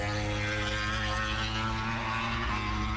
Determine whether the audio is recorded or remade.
recorded